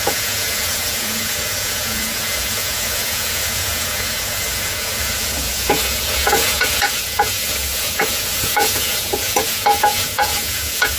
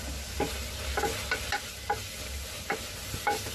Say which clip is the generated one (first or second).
first